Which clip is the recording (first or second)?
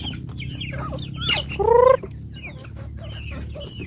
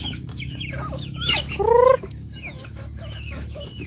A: first